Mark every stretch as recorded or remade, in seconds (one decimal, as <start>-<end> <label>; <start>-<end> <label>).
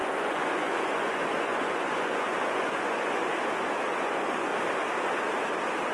0.0-3.3 remade; 3.3-3.9 recorded; 3.9-4.5 remade; 4.5-5.9 recorded